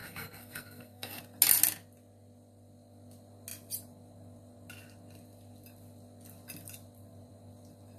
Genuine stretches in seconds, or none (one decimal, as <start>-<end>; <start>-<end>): 1.2-8.0